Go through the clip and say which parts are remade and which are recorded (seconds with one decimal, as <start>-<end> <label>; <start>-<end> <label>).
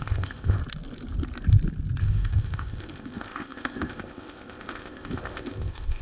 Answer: 0.0-0.6 remade; 0.6-2.0 recorded; 2.0-6.0 remade